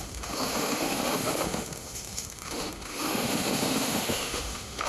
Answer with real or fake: fake